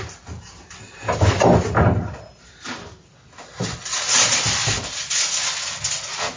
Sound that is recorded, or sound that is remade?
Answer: recorded